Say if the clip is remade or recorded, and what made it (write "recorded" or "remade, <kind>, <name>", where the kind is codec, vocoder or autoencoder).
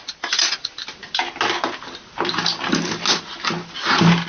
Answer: recorded